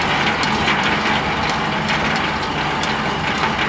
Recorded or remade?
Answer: recorded